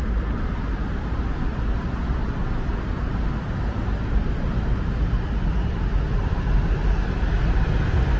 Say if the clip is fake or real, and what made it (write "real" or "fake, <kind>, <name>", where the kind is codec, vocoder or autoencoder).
real